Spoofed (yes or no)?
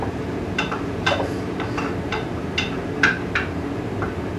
yes